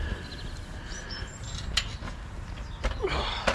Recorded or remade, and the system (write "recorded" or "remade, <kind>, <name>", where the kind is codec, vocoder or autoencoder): recorded